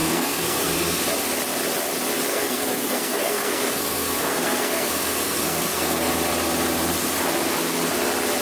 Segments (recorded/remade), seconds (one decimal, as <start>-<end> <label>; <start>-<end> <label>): 0.0-1.0 remade; 1.0-2.3 recorded; 2.3-6.1 remade; 6.1-8.4 recorded